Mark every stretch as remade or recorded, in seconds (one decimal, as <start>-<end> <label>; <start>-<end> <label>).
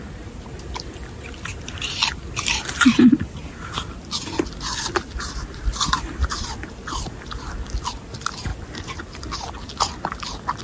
0.0-1.5 recorded; 1.5-3.1 remade; 3.1-10.6 recorded